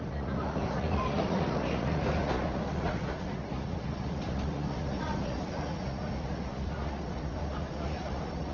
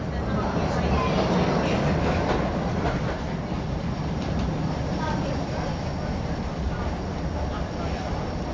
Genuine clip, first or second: second